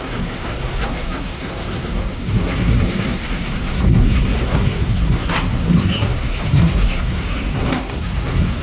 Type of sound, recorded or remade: remade